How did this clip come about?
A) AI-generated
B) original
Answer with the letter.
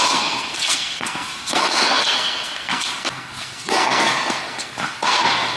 A